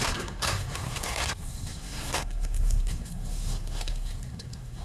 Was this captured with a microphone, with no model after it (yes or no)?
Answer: no